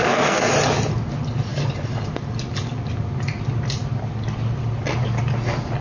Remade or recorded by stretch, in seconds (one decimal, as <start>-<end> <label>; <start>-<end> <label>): 0.0-0.5 remade; 0.5-5.8 recorded